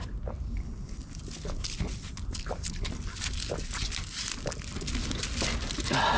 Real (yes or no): yes